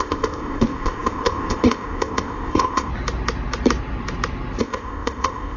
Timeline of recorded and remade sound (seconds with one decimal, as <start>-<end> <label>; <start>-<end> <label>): 0.0-2.9 remade; 2.9-4.6 recorded; 4.6-5.6 remade